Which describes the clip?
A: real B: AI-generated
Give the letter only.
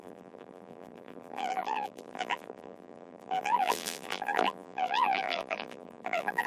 B